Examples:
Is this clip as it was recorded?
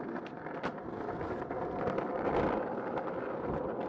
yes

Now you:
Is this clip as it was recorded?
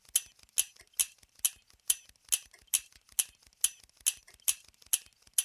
yes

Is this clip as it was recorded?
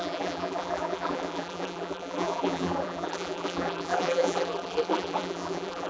no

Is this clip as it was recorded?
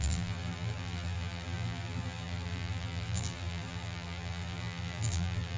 no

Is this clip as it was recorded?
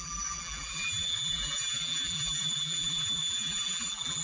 no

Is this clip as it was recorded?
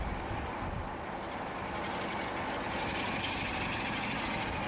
yes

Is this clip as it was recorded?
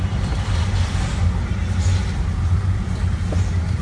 yes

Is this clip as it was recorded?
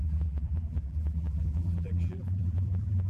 no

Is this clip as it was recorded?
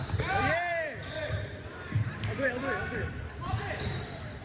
no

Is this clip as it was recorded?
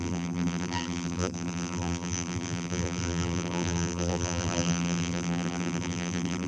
no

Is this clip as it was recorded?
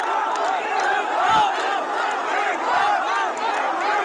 yes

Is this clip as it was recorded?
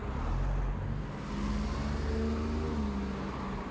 yes